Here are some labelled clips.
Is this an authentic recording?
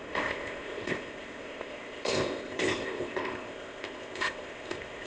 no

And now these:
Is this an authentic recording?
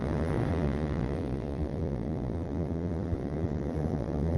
no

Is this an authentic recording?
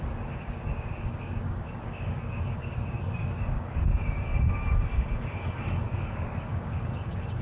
no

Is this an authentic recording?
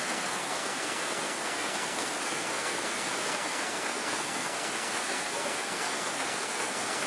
no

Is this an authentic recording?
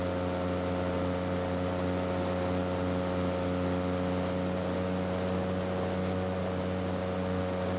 yes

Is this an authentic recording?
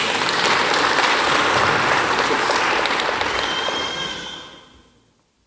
yes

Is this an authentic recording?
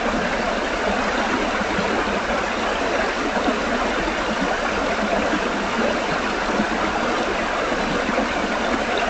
yes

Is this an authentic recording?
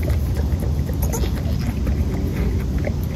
yes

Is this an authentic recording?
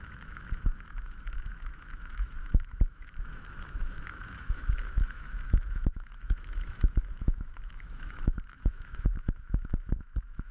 no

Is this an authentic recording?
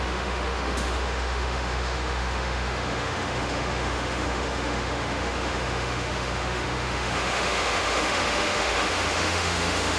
no